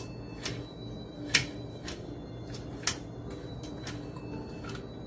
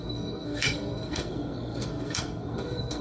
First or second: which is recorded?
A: first